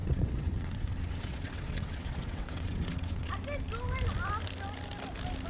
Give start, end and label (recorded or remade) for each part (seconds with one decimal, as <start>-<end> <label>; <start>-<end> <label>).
0.0-3.3 remade; 3.3-5.5 recorded